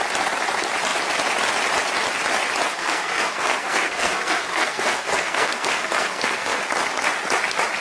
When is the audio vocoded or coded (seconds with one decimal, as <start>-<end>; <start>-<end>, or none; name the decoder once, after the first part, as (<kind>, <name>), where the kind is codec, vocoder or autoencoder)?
2.7-6.6 (codec, SNAC)